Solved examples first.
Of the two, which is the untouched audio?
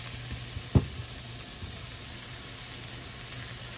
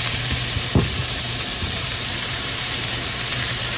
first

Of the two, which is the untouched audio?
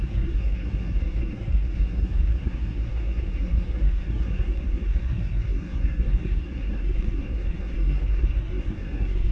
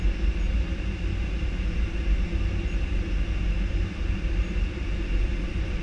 second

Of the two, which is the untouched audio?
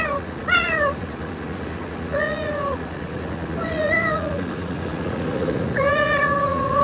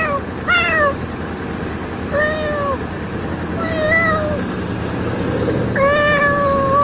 second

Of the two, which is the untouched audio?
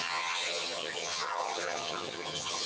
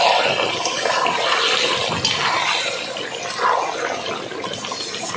second